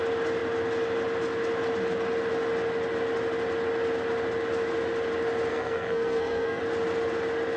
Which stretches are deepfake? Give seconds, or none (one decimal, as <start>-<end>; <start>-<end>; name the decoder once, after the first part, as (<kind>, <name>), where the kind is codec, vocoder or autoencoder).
5.5-6.6 (codec, SNAC)